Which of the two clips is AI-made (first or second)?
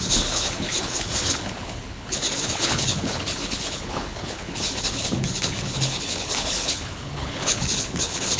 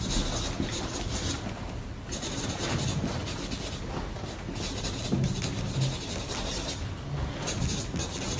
first